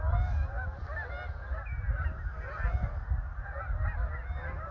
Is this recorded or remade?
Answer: recorded